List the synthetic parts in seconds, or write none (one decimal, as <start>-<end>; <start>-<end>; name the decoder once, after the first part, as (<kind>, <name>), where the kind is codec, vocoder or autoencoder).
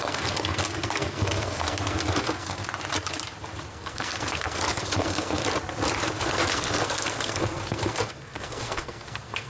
0.0-2.6 (codec, SNAC); 3.7-5.4; 6.2-9.5